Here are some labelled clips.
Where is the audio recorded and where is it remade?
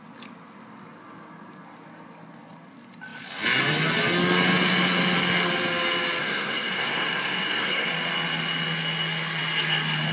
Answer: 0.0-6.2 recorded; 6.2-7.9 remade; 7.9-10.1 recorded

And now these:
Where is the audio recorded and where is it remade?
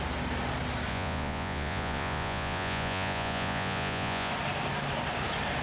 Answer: 0.0-0.9 recorded; 0.9-4.3 remade; 4.3-5.6 recorded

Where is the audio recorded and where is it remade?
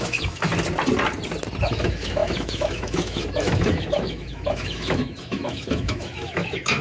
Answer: 0.0-0.5 remade; 0.5-1.6 recorded; 1.6-6.8 remade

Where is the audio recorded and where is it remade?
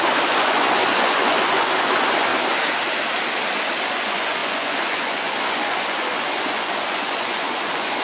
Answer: 0.0-2.3 remade; 2.3-3.8 recorded; 3.8-8.0 remade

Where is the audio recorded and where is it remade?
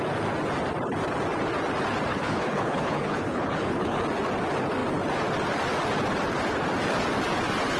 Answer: 0.0-2.1 recorded; 2.1-4.0 remade; 4.0-7.8 recorded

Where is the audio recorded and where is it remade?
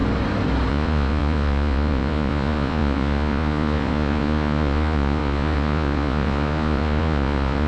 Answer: 0.0-0.7 recorded; 0.7-7.7 remade